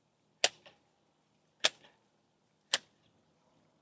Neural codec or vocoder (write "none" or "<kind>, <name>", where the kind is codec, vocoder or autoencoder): none